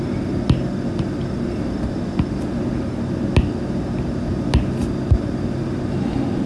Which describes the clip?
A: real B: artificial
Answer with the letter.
A